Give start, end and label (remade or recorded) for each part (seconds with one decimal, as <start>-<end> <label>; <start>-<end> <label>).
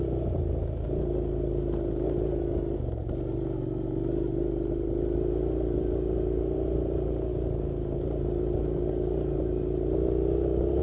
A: 0.0-10.8 recorded